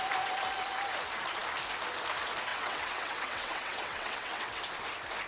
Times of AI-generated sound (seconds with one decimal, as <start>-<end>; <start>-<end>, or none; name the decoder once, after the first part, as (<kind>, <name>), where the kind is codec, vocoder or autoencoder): 2.5-4.6 (vocoder, WaveNeXt)